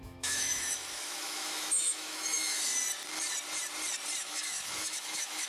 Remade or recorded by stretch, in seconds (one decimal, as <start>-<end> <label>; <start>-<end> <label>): 0.0-2.7 remade; 2.7-4.2 recorded; 4.2-5.5 remade